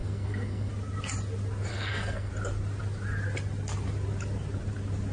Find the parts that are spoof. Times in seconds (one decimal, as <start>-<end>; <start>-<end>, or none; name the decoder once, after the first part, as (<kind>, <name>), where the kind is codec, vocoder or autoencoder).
0.0-0.7 (codec, SNAC); 1.7-2.3